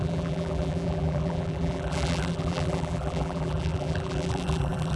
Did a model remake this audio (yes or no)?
yes